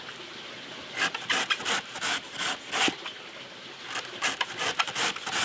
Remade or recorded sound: recorded